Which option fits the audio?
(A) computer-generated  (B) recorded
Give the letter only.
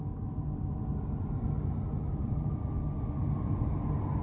B